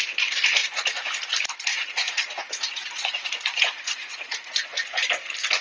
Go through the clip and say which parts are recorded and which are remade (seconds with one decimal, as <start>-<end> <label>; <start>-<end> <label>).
0.0-0.6 recorded; 0.6-1.1 remade; 1.1-1.7 recorded; 1.7-5.1 remade; 5.1-5.6 recorded